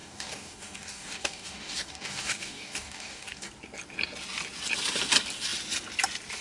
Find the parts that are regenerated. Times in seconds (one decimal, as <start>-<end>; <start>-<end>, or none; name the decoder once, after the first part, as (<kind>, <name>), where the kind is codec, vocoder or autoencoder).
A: 0.0-3.5 (codec, DAC)